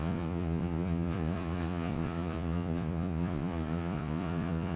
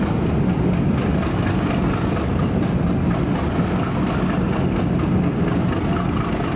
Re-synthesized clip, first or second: first